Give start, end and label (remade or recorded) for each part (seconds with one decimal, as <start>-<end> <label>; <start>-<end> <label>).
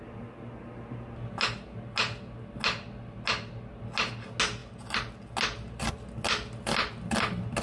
0.0-7.6 recorded